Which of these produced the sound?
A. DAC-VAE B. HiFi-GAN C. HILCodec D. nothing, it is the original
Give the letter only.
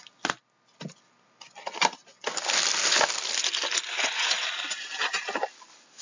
D